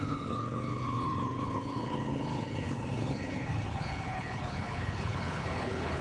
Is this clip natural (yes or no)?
no